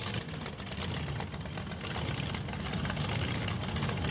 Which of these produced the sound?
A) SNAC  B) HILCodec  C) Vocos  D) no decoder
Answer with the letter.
D